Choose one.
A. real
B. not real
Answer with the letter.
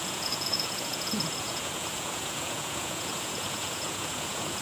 B